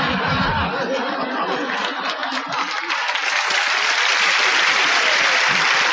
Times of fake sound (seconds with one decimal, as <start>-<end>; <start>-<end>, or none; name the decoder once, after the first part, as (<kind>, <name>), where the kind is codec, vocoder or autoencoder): 4.5-5.2 (vocoder, BigVGAN v2)